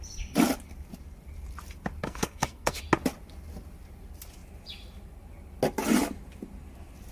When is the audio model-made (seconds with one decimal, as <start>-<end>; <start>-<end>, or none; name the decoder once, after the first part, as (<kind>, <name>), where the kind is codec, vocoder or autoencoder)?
2.0-2.8 (codec, SNAC)